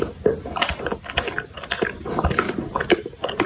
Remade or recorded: recorded